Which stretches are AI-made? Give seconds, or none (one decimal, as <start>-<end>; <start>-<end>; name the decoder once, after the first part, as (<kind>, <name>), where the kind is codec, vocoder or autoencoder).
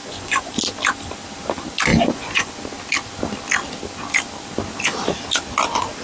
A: 0.0-0.5 (vocoder, Vocos); 1.9-2.5